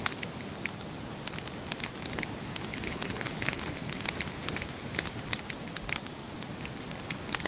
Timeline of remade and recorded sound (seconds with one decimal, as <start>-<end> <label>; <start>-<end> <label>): 0.0-2.7 recorded; 2.7-4.0 remade; 4.0-7.5 recorded